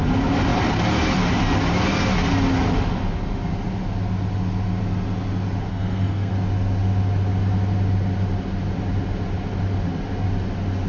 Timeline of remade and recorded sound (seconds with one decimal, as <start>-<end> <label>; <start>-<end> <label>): 0.0-5.7 recorded; 5.7-6.3 remade; 6.3-10.9 recorded